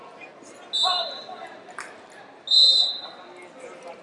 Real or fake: real